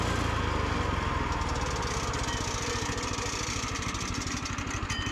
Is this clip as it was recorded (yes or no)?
yes